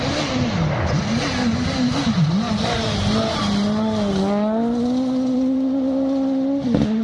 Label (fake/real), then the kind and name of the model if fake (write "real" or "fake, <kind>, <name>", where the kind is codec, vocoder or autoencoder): real